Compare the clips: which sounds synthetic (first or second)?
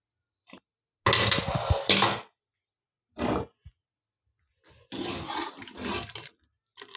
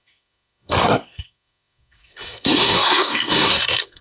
second